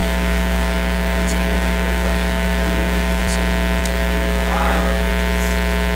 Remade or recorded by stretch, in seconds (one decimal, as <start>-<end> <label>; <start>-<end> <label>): 0.0-3.2 remade; 3.2-3.8 recorded; 3.8-5.1 remade; 5.1-6.0 recorded